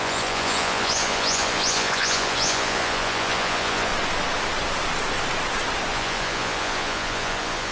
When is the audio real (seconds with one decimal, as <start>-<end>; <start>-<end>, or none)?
3.9-5.9